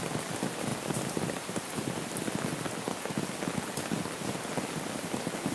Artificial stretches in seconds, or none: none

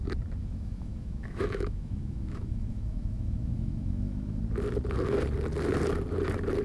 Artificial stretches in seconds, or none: 0.4-4.4 (autoencoder, DAC-VAE)

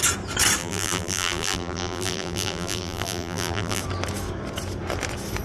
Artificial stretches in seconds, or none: 0.6-3.8 (vocoder, BigVGAN v2)

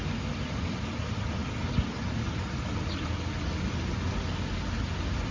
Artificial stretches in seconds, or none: none

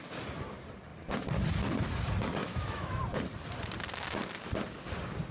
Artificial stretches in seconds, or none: 2.4-3.0 (autoencoder, DAC-VAE)

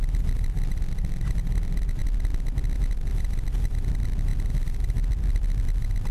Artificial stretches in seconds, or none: none

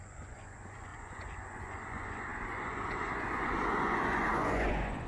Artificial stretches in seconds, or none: 0.0-5.1 (vocoder, Vocos)